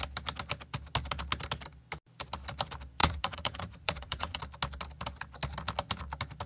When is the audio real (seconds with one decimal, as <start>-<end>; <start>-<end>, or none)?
0.0-3.0; 4.4-6.5